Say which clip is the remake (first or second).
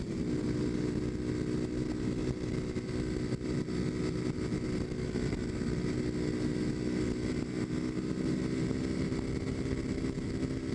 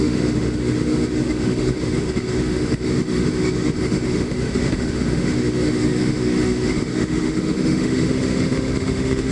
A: second